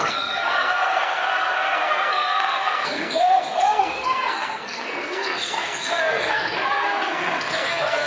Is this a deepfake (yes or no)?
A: yes